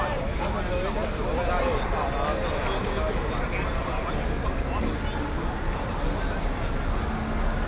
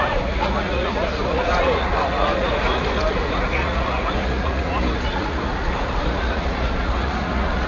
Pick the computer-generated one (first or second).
second